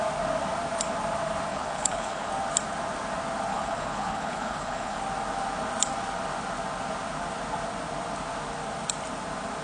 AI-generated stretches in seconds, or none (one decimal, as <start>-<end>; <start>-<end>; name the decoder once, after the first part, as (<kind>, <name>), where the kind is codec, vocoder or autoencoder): 1.5-2.3 (codec, HILCodec); 3.5-5.0